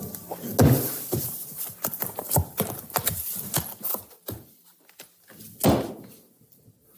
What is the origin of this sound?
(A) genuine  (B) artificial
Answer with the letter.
A